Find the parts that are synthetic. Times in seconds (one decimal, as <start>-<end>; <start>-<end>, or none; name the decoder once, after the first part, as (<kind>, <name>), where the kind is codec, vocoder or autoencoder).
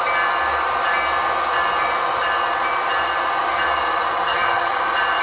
4.3-4.8 (vocoder, HiFi-GAN)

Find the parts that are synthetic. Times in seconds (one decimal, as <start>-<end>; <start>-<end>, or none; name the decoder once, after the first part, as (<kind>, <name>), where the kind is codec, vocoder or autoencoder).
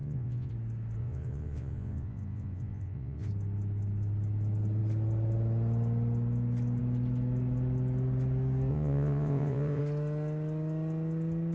0.0-0.5 (vocoder, Vocos); 1.0-3.3; 8.7-9.8